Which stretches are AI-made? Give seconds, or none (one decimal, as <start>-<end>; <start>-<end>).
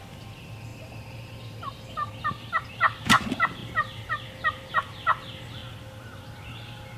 0.0-7.0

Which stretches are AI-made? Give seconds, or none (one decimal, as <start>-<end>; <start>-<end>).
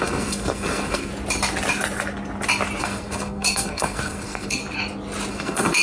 0.0-1.1; 2.8-4.6; 5.3-5.8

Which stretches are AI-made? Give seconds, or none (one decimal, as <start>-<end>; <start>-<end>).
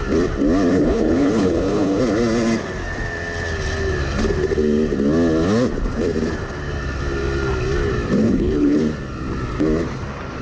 0.7-2.0; 8.2-8.8